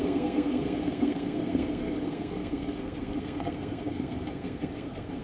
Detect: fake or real fake